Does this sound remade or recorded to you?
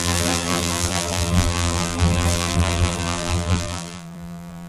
remade